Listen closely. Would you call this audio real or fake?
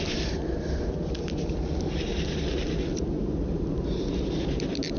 fake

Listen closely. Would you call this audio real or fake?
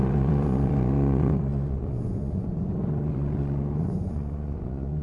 fake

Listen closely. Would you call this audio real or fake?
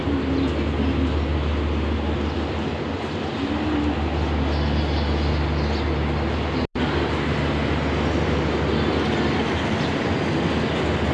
real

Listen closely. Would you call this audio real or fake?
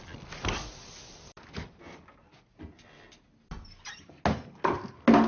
real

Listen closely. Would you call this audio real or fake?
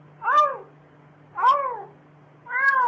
real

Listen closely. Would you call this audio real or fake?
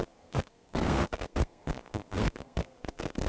fake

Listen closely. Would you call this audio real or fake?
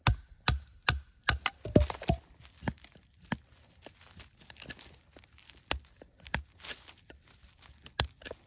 real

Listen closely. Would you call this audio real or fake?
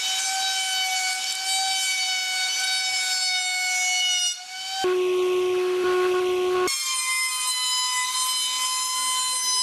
real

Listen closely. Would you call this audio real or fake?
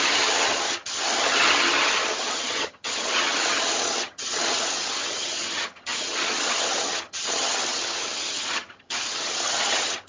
fake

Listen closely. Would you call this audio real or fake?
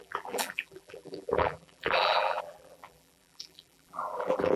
fake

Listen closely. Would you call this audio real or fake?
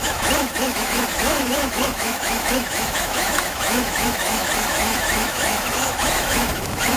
fake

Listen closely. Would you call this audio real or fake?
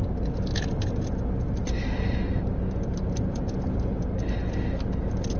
real